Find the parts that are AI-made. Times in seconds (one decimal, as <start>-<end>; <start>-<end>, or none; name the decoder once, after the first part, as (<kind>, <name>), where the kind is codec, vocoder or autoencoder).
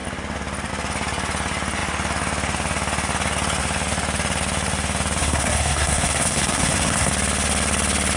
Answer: 5.2-7.1 (codec, SNAC)